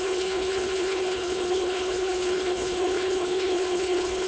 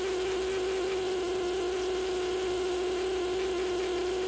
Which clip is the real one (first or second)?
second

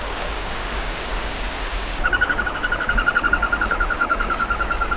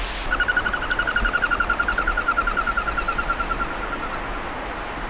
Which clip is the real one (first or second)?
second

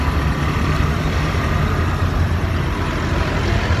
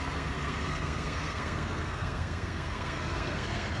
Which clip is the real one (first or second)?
first